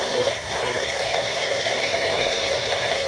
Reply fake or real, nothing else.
fake